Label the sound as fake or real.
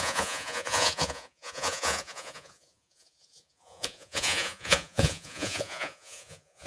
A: fake